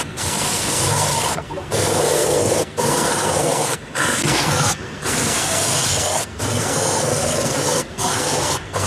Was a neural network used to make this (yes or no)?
yes